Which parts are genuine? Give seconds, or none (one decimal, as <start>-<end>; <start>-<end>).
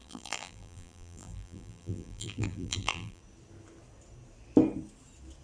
3.2-5.4